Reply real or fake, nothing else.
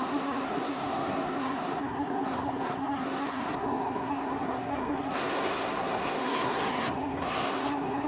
fake